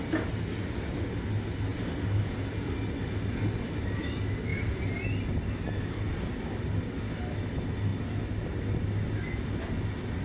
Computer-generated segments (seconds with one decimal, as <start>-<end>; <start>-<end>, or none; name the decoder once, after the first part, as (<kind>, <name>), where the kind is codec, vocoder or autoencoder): none